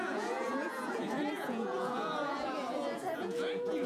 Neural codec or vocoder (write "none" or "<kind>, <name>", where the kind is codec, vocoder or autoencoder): vocoder, Vocos